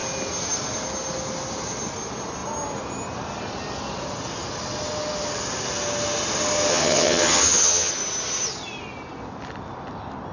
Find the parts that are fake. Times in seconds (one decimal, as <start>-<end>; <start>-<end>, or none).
6.7-7.9